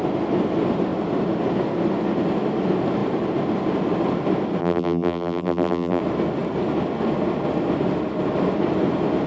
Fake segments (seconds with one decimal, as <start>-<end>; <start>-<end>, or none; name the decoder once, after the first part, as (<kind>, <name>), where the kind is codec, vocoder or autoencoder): 4.6-6.0 (vocoder, BigVGAN v2)